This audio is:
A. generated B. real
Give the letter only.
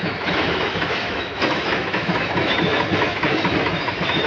A